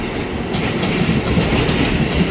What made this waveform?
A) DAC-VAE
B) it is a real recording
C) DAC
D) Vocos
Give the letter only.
B